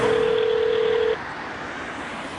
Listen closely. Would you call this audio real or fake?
real